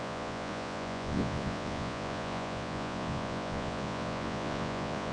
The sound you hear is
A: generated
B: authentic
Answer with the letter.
A